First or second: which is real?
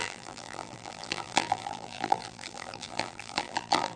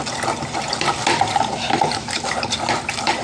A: second